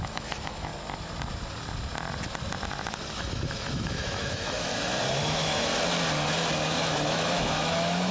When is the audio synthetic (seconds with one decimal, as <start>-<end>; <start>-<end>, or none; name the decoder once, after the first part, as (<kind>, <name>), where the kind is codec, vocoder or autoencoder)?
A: 0.0-0.7 (autoencoder, DAC-VAE); 3.1-4.7; 5.2-5.7; 6.8-8.1